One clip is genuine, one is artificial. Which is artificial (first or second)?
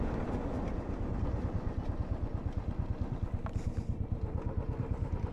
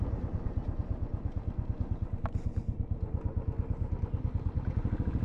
first